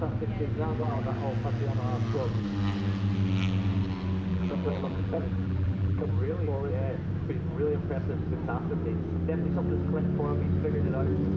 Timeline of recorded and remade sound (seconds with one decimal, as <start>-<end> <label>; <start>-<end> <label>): 0.0-0.7 recorded; 0.7-1.2 remade; 1.2-4.3 recorded; 4.3-6.1 remade; 6.1-11.4 recorded